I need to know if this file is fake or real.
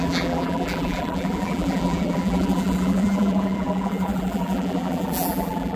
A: fake